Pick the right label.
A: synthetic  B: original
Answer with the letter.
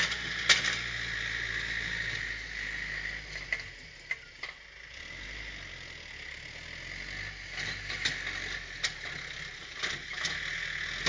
B